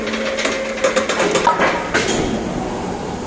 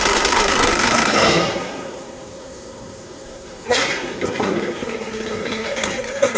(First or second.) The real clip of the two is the first